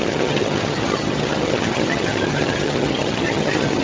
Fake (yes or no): yes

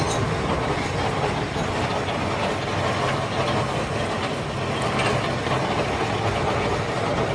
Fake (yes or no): no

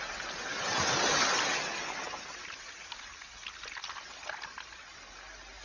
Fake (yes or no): no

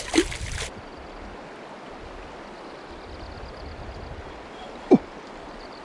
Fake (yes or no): no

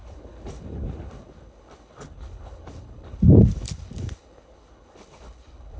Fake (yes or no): yes